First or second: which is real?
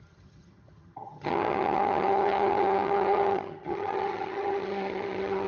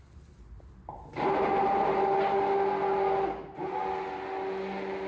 second